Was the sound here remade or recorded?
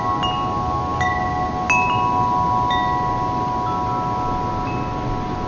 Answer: recorded